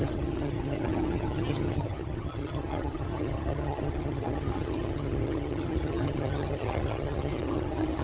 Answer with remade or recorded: remade